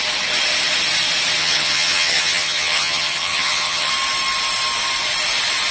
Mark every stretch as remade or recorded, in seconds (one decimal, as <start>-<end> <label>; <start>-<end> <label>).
0.0-1.4 recorded; 1.4-3.9 remade; 3.9-5.7 recorded